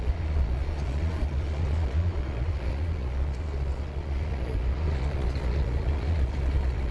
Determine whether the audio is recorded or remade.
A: remade